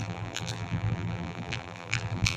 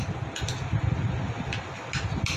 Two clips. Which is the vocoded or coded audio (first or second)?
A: first